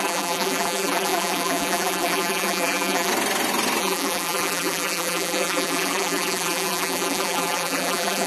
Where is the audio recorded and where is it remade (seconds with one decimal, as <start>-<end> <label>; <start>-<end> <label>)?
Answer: 0.0-3.1 remade; 3.1-3.8 recorded; 3.8-8.3 remade